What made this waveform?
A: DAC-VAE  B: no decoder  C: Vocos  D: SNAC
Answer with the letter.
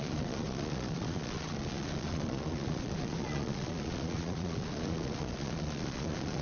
C